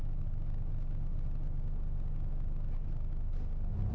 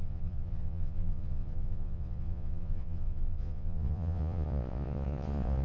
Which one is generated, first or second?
second